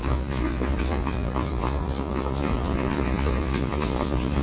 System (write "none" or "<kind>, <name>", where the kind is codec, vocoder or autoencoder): vocoder, Vocos